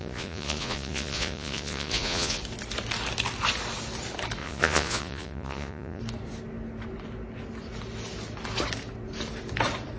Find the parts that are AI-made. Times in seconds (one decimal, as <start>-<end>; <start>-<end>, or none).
0.0-2.4; 4.4-6.0